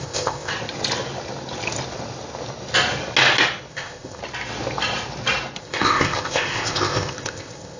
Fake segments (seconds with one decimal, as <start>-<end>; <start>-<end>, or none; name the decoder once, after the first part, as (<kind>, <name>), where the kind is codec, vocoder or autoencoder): 0.0-0.5 (codec, ZipCodec); 3.7-4.2; 5.6-7.8